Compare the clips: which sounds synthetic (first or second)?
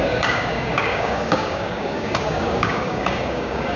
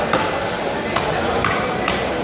first